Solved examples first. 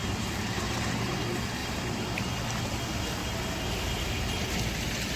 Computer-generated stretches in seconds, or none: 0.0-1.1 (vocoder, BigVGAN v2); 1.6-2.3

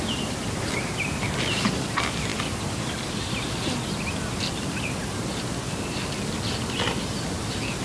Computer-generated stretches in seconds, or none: none

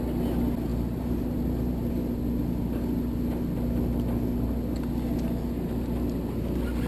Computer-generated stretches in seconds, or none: 0.7-1.9 (vocoder, BigVGAN v2)